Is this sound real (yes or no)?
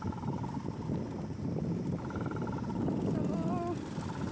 no